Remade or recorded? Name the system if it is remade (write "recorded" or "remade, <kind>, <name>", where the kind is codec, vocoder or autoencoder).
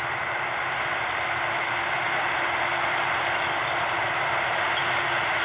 recorded